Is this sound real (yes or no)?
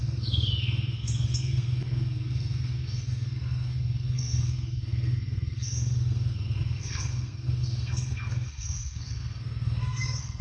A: no